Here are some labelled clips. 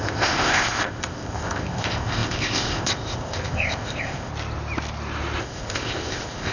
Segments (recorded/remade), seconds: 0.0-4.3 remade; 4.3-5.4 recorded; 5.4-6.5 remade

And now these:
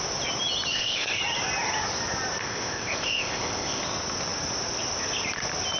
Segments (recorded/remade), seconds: 0.0-0.7 recorded; 0.7-1.2 remade; 1.2-2.4 recorded; 2.4-3.8 remade; 3.8-5.8 recorded

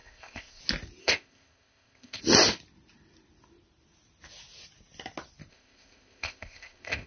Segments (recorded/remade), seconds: 0.0-0.6 remade; 0.6-1.0 recorded; 1.0-2.2 remade; 2.2-5.5 recorded; 5.5-7.1 remade